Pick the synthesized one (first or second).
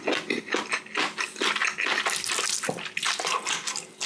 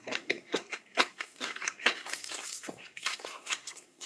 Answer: second